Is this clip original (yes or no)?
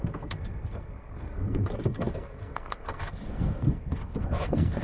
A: no